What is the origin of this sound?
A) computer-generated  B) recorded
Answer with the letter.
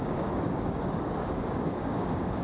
A